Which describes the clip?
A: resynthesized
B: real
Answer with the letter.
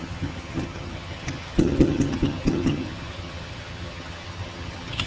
A